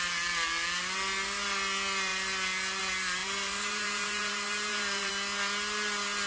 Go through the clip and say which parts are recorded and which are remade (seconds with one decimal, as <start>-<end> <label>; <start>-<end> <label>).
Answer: 0.0-3.2 recorded; 3.2-5.1 remade; 5.1-6.3 recorded